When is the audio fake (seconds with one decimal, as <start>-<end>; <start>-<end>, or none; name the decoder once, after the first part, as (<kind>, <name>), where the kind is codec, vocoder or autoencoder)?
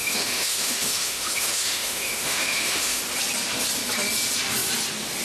0.0-3.0 (autoencoder, DAC-VAE)